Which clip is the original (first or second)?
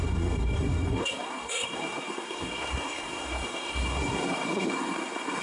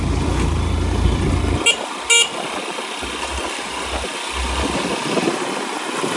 second